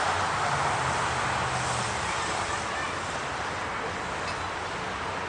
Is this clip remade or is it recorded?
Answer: recorded